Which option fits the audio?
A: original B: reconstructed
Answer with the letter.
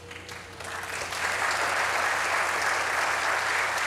A